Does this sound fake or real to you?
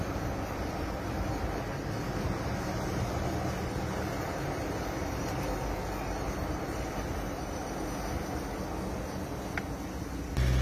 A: real